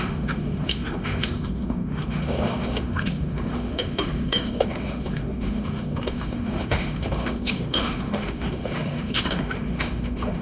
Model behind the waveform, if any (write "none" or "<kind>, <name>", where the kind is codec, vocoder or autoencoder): autoencoder, DAC-VAE